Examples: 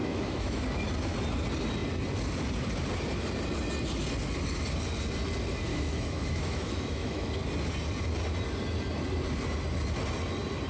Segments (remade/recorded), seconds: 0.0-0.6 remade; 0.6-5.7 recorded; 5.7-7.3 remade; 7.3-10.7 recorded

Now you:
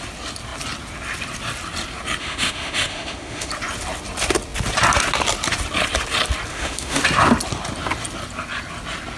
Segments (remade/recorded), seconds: 0.0-2.2 recorded; 2.2-3.5 remade; 3.5-6.5 recorded; 6.5-7.0 remade; 7.0-9.2 recorded

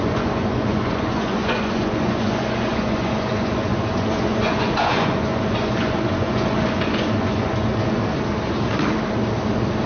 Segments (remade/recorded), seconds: 0.0-8.0 remade; 8.0-9.9 recorded

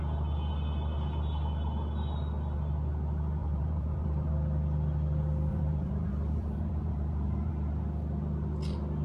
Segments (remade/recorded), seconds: 0.0-3.4 recorded; 3.4-4.3 remade; 4.3-5.5 recorded; 5.5-7.5 remade; 7.5-9.0 recorded